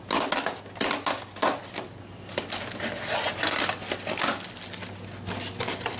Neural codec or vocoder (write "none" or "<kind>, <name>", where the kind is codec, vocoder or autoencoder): none